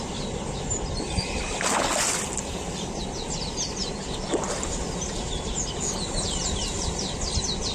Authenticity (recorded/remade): recorded